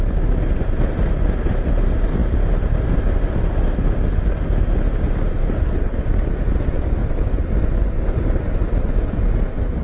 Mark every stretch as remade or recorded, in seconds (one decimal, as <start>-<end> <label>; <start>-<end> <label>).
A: 0.0-5.4 recorded; 5.4-6.0 remade; 6.0-9.8 recorded